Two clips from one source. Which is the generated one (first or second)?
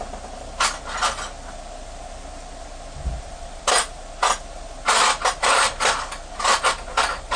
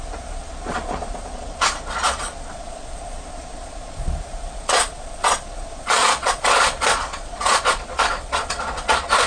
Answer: second